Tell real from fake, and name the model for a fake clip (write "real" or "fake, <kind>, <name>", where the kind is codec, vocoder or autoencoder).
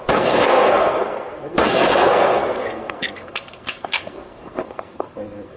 fake, codec, SNAC